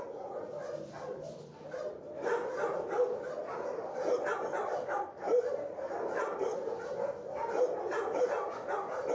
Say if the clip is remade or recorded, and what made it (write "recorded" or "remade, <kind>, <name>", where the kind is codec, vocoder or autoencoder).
recorded